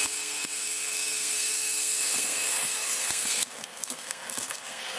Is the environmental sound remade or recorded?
remade